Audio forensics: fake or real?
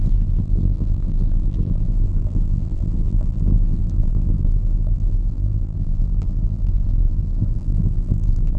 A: fake